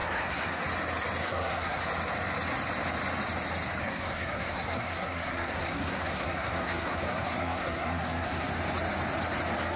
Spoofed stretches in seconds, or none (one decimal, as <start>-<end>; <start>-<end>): 0.0-0.6; 1.2-1.8; 3.8-8.5